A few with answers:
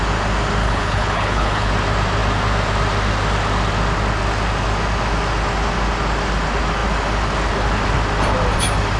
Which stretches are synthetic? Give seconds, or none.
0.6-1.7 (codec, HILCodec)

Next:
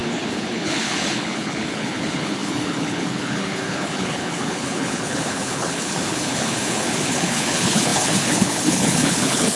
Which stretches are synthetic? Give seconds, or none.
0.0-9.6 (codec, HILCodec)

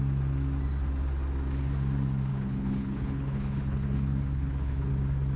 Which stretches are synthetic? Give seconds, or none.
2.3-4.9 (codec, HILCodec)

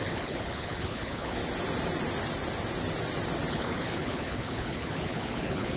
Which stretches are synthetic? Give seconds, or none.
0.0-1.4 (codec, HILCodec); 3.5-5.8

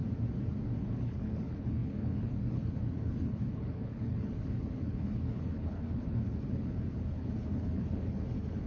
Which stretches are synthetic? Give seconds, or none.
0.8-8.7 (codec, HILCodec)

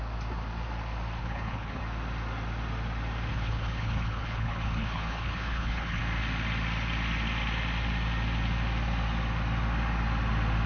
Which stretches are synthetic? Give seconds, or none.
1.2-1.8 (codec, HILCodec); 3.3-6.0